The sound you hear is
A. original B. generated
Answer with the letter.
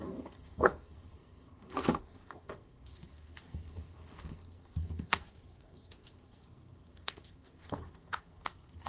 B